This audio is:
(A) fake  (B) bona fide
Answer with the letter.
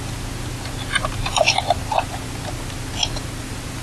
B